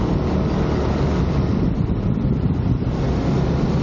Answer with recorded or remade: recorded